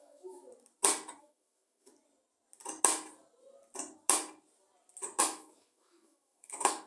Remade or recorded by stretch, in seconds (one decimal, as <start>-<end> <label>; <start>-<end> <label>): 0.0-0.4 remade; 0.4-1.2 recorded; 1.2-1.9 remade; 1.9-5.2 recorded; 5.2-6.9 remade